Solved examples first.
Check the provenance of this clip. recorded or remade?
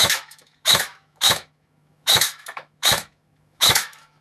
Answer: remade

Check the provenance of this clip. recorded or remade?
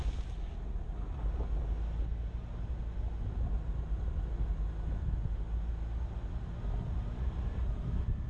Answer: recorded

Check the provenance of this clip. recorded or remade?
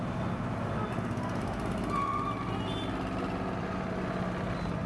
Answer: recorded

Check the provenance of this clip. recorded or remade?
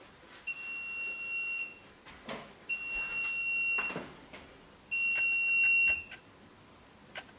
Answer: recorded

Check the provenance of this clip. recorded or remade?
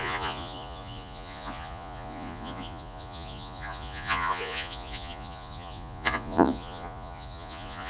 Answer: remade